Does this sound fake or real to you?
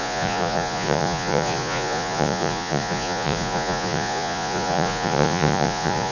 fake